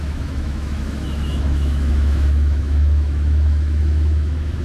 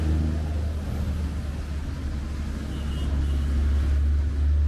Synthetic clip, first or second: first